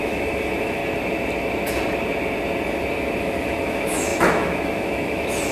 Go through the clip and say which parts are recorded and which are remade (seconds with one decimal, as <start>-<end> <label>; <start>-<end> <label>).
0.0-0.8 remade; 0.8-3.2 recorded; 3.2-5.5 remade